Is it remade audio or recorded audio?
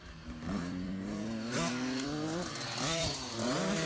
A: remade